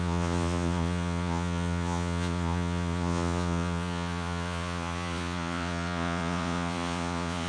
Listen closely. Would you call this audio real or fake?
fake